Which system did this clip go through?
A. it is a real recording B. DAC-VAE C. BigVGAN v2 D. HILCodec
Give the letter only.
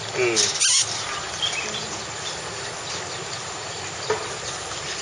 A